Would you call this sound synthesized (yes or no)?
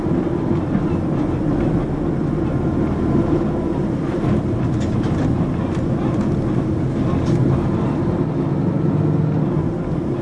no